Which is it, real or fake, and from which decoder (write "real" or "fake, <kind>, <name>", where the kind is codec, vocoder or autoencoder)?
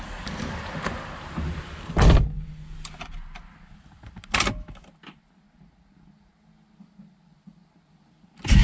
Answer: real